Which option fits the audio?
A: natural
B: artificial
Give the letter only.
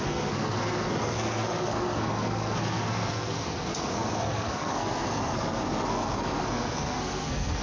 B